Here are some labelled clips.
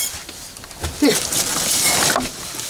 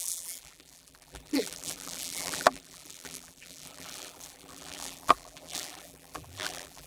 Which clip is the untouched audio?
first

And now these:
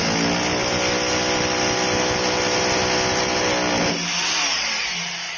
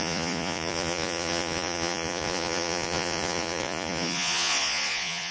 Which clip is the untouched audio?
first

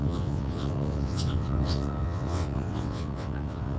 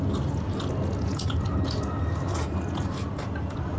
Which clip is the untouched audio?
second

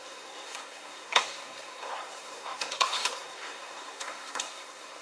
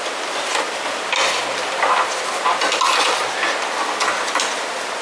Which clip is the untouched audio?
second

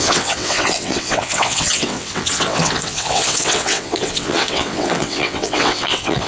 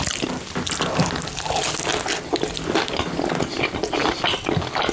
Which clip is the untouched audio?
second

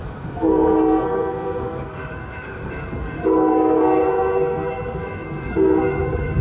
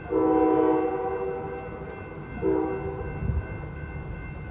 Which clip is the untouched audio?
second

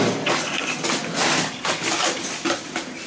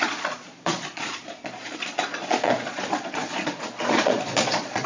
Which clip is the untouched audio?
first